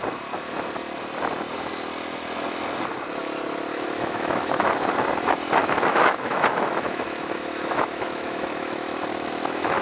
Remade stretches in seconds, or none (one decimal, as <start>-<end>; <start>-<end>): 3.7-4.7; 5.6-9.8